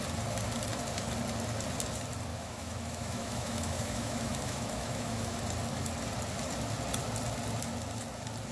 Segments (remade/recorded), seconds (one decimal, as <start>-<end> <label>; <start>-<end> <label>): 0.0-2.3 recorded; 2.3-5.4 remade; 5.4-8.5 recorded